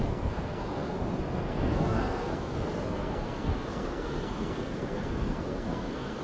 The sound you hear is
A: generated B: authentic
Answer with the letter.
A